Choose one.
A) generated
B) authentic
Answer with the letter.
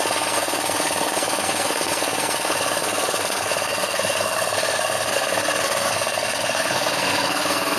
A